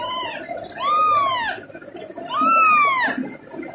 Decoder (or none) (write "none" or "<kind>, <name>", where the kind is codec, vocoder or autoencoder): none